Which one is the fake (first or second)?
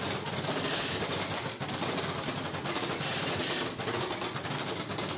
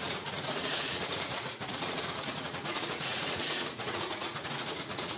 second